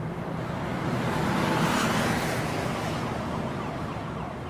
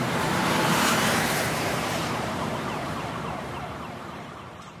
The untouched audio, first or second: first